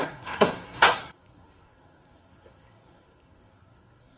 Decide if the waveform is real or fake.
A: fake